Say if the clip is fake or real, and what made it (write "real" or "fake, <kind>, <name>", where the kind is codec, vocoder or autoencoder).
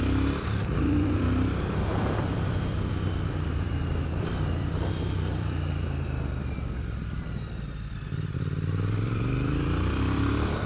fake, vocoder, BigVGAN v2